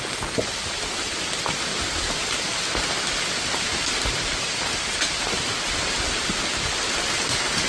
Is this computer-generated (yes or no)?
no